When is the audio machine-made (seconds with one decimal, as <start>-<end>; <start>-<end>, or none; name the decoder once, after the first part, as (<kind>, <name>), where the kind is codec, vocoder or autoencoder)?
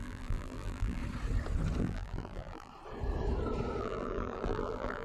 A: 0.0-1.0 (vocoder, BigVGAN v2); 1.8-2.7; 3.8-5.0